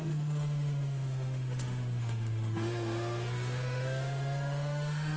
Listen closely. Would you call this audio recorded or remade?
remade